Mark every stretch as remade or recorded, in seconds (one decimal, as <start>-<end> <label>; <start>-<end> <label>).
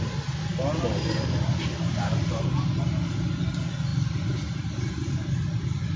0.0-6.0 recorded